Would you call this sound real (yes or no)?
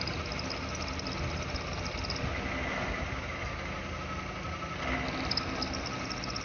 yes